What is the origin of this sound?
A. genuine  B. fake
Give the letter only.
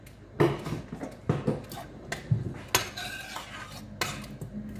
A